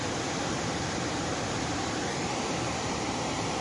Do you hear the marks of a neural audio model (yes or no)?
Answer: yes